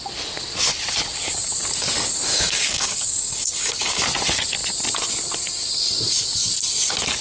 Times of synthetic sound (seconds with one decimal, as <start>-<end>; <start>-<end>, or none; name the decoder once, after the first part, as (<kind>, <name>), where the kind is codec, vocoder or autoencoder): 2.3-4.0 (codec, DAC)